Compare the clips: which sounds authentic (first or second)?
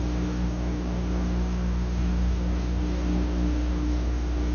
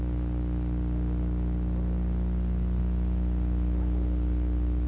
second